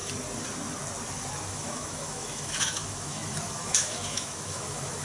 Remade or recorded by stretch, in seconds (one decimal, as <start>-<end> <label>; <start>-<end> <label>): 0.0-1.5 recorded; 1.5-5.0 remade